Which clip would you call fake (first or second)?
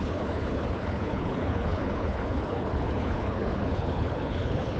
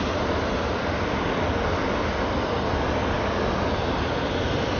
first